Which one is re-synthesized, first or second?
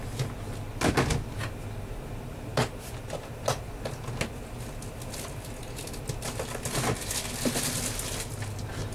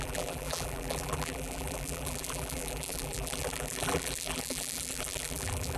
second